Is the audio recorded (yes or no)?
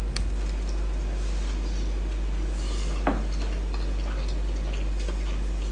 yes